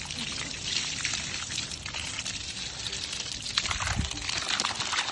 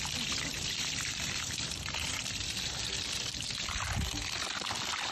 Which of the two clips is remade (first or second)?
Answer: second